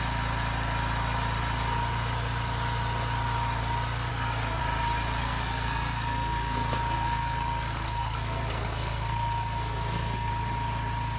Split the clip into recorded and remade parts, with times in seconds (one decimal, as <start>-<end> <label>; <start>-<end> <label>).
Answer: 0.0-4.1 recorded; 4.1-4.6 remade; 4.6-5.2 recorded; 5.2-10.3 remade; 10.3-11.2 recorded